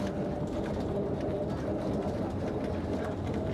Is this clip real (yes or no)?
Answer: no